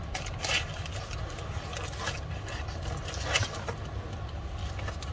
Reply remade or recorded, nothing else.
recorded